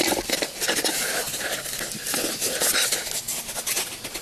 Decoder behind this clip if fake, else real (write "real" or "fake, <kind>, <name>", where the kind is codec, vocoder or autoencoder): real